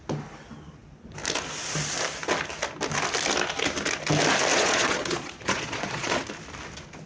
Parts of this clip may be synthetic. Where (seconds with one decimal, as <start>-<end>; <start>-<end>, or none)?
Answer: 4.5-6.2